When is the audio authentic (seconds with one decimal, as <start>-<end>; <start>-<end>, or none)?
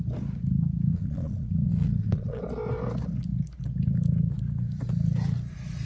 0.0-0.9; 2.4-5.9